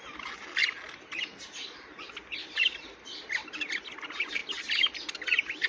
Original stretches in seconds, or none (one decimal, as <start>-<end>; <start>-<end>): 0.0-5.7